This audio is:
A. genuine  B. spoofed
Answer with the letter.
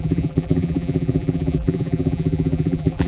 B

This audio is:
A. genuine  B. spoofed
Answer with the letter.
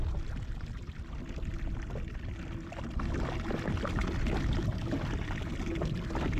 A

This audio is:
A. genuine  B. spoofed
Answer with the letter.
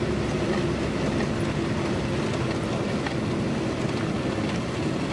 A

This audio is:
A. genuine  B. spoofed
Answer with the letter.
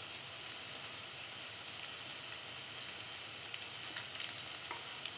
A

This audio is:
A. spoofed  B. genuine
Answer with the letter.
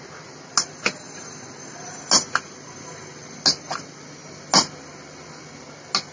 B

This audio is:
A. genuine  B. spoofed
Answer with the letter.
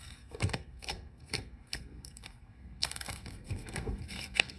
B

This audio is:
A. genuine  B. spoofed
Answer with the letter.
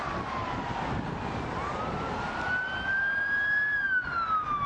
A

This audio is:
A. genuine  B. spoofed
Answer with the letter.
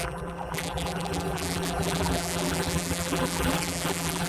B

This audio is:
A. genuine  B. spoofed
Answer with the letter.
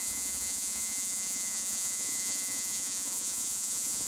B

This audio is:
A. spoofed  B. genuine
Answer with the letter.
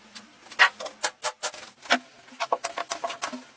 B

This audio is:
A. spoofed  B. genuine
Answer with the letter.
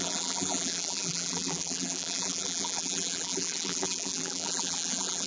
A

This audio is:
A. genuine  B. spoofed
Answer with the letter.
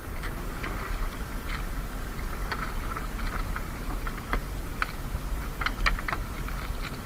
A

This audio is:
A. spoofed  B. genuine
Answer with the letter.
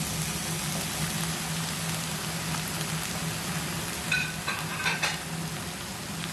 B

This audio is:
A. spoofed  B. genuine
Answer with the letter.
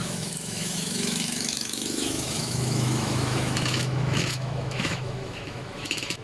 A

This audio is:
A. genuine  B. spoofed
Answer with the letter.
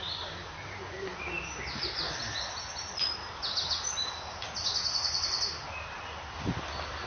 A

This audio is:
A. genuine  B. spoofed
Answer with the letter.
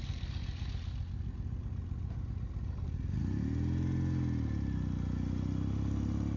A